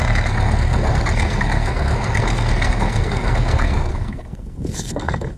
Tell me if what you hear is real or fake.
fake